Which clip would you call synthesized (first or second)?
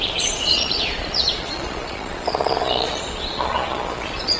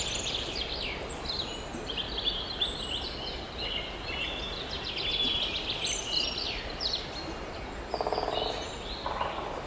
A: first